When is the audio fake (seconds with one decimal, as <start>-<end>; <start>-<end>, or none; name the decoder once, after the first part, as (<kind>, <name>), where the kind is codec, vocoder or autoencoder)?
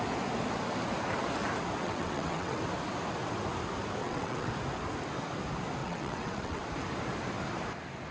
1.8-2.6 (vocoder, WaveNeXt); 4.0-4.5; 5.8-6.6